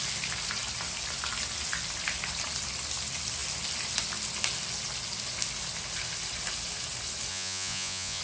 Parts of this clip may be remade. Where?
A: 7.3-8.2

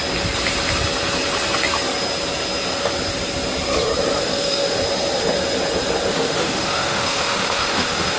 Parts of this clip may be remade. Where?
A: 4.1-4.8; 6.1-8.2

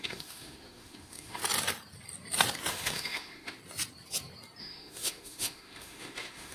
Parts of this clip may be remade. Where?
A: 0.0-1.4; 2.7-3.6; 4.6-6.5

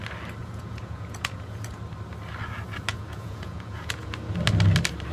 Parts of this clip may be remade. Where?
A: 0.4-1.8; 2.9-4.1

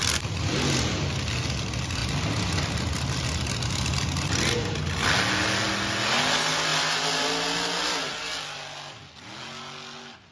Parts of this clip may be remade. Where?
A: none

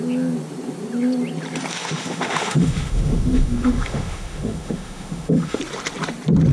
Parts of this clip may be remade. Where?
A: 1.7-5.6

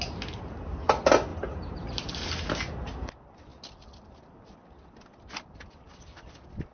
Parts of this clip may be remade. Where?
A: 1.3-2.3

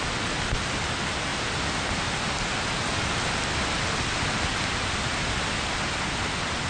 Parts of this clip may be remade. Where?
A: none